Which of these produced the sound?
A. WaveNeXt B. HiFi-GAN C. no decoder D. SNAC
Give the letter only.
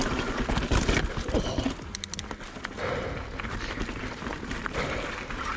C